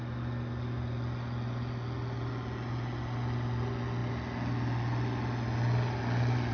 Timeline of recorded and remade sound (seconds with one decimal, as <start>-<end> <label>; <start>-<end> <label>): 0.0-6.5 recorded